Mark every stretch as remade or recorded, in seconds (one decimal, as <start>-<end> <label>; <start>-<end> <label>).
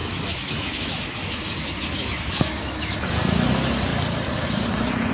0.0-3.1 remade; 3.1-5.1 recorded